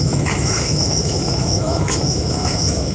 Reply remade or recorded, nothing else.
remade